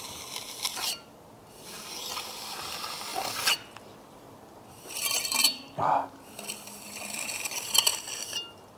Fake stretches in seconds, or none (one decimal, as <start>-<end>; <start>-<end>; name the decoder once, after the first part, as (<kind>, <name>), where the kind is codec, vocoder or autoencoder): none